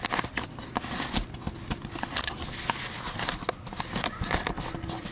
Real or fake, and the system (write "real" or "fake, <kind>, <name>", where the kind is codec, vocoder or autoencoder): real